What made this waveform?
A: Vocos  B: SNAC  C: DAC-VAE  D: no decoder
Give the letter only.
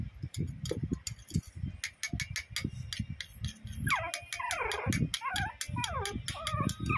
D